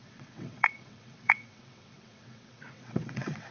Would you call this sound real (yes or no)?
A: no